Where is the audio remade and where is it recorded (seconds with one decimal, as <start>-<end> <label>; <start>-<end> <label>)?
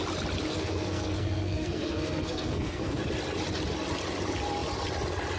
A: 0.0-0.5 recorded; 0.5-3.0 remade; 3.0-5.4 recorded